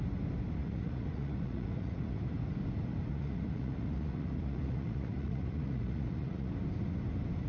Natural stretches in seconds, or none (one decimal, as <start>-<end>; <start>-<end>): 0.0-0.6; 2.2-3.1; 6.5-7.5